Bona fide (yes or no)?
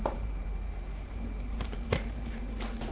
no